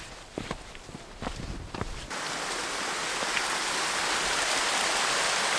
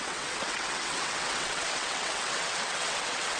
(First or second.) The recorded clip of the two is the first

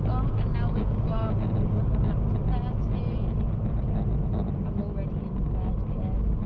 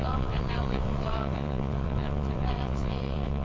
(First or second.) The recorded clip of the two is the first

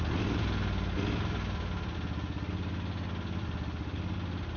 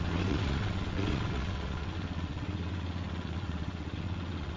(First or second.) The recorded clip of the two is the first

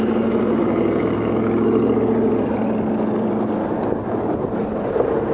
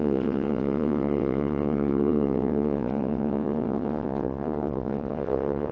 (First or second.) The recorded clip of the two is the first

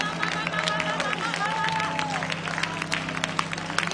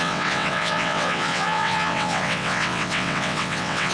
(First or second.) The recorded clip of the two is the first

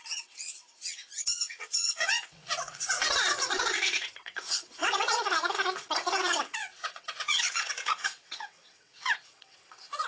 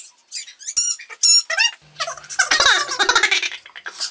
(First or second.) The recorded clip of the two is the second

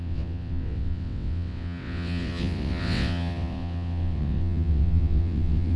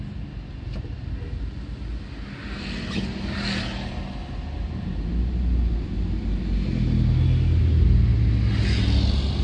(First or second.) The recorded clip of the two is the second